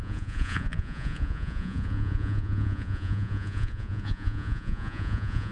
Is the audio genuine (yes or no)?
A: no